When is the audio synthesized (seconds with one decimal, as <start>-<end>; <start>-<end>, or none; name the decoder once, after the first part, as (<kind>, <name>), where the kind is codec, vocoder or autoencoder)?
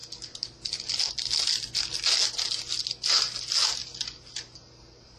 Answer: none